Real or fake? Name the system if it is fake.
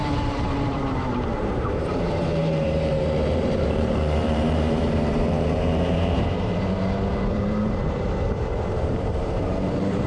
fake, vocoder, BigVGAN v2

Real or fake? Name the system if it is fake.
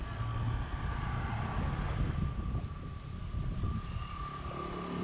real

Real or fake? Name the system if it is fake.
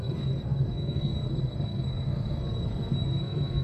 fake, codec, SNAC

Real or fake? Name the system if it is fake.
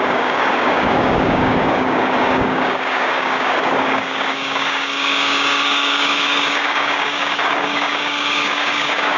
fake, codec, DAC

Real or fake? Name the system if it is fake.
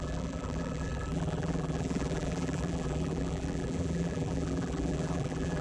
fake, vocoder, BigVGAN v2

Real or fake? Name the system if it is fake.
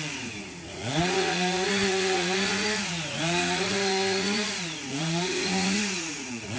fake, vocoder, Vocos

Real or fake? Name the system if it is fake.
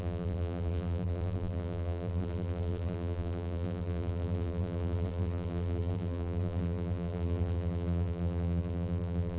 fake, vocoder, BigVGAN v2